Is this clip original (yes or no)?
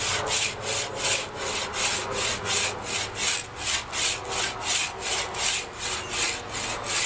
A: yes